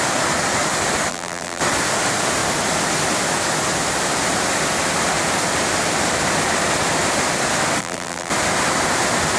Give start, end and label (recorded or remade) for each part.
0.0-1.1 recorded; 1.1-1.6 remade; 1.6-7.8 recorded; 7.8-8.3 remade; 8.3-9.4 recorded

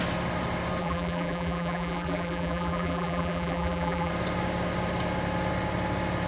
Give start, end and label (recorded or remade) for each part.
0.0-0.8 recorded; 0.8-4.1 remade; 4.1-6.3 recorded

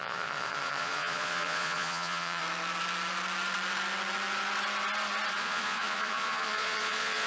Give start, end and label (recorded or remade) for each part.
0.0-2.4 remade; 2.4-5.3 recorded; 5.3-7.3 remade

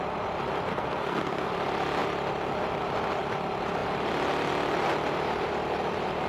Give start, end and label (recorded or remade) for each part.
0.0-0.7 recorded; 0.7-1.5 remade; 1.5-6.3 recorded

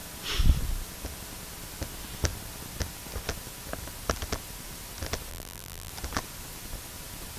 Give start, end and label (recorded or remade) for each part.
0.0-5.3 recorded; 5.3-5.9 remade; 5.9-7.4 recorded

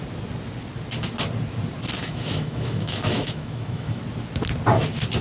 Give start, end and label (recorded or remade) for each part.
0.0-2.0 recorded; 2.0-4.0 remade; 4.0-5.2 recorded